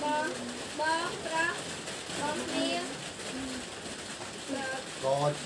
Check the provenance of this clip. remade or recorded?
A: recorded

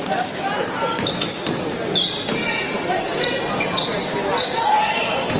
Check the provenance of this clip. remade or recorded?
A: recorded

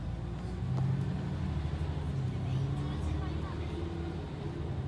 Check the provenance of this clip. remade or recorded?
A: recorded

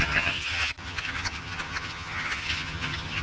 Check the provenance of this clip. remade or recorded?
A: remade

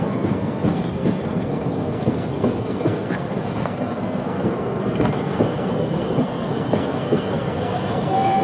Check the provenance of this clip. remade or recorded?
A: remade